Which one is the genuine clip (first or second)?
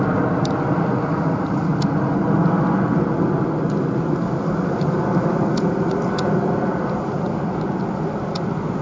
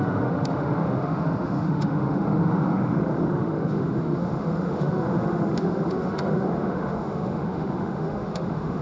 first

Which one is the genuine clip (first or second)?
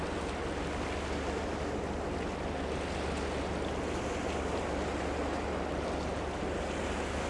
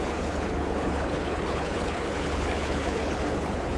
first